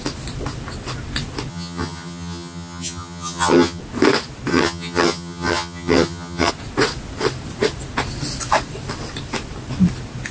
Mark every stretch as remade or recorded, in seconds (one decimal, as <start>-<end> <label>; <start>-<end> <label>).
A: 0.0-1.5 recorded; 1.5-3.8 remade; 3.8-4.5 recorded; 4.5-6.5 remade; 6.5-10.3 recorded